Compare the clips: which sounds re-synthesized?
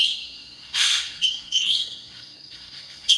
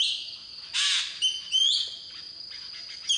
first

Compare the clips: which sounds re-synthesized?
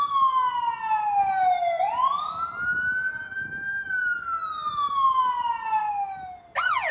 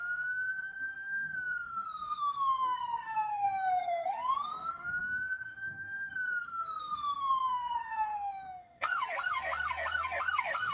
second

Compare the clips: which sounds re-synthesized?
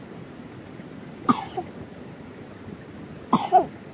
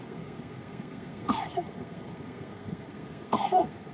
second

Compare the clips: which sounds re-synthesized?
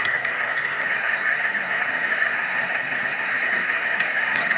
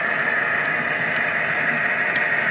first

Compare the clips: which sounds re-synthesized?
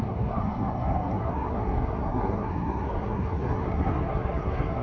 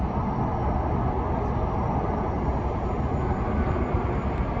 first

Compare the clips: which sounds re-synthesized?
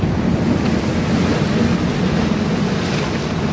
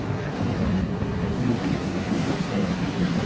second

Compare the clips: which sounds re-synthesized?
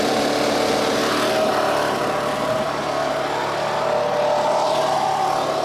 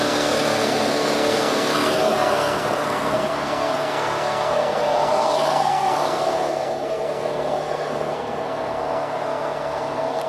second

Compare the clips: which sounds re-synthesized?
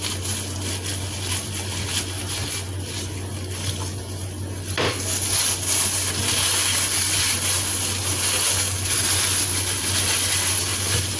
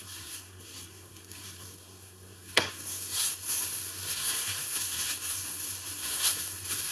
second